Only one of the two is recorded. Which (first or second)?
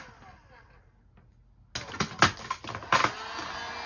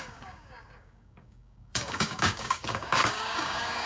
first